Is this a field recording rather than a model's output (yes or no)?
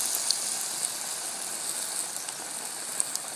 yes